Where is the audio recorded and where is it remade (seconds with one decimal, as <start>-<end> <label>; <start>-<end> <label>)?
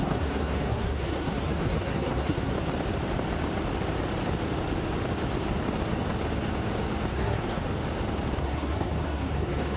0.0-2.5 remade; 2.5-7.1 recorded; 7.1-7.6 remade; 7.6-8.4 recorded; 8.4-9.8 remade